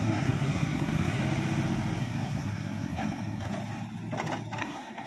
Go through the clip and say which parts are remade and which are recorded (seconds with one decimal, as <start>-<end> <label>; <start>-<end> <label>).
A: 0.0-1.2 remade; 1.2-2.0 recorded; 2.0-3.5 remade; 3.5-4.6 recorded; 4.6-5.1 remade